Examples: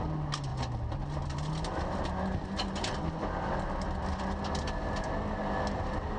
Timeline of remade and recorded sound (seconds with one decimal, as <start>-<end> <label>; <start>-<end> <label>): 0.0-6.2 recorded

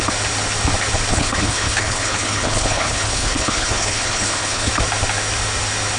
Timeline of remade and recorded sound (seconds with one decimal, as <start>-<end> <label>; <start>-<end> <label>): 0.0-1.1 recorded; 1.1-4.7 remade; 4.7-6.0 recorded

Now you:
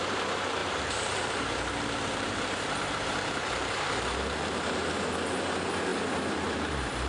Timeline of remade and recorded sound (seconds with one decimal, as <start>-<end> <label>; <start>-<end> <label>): 0.0-0.6 recorded; 0.6-4.9 remade; 4.9-5.9 recorded; 5.9-7.1 remade

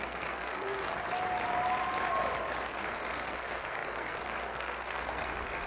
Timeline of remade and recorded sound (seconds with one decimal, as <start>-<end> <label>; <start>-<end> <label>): 0.0-0.8 remade; 0.8-2.7 recorded; 2.7-5.7 remade